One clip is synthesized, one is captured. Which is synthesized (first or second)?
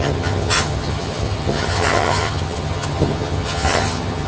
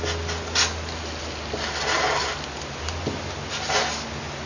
first